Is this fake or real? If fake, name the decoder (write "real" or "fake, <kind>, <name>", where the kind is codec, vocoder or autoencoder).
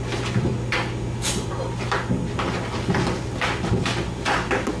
real